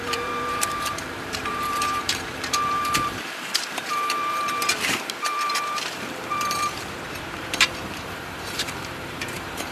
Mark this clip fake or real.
fake